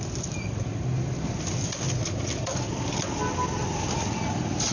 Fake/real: real